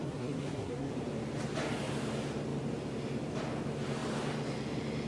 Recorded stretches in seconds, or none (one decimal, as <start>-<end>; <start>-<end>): 0.9-5.1